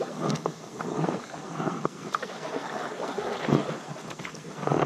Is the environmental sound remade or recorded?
remade